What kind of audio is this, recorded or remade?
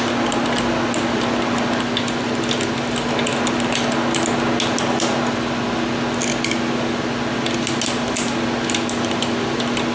recorded